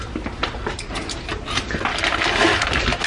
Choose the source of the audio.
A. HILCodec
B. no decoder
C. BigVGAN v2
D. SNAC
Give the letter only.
B